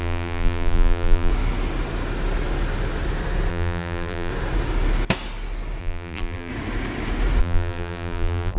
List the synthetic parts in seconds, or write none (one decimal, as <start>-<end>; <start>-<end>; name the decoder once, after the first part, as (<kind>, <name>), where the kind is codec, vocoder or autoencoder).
0.0-1.3 (vocoder, BigVGAN v2); 3.5-4.3; 5.8-6.5; 7.4-8.6